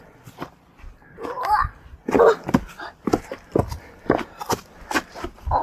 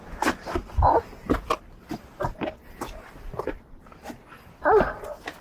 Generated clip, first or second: first